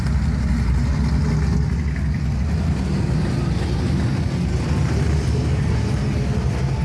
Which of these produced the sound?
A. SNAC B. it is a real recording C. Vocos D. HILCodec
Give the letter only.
B